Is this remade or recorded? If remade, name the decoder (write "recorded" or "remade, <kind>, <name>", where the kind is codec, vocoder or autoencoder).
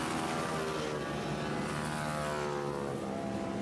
recorded